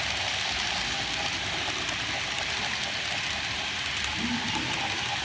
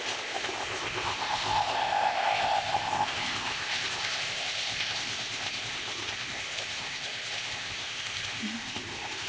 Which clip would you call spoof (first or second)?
second